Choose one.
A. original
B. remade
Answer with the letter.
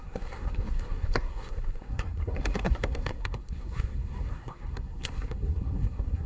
B